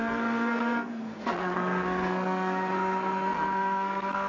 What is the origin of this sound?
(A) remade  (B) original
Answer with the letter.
A